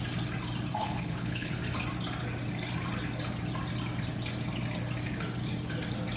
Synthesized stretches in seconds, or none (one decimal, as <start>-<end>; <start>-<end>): 0.8-1.5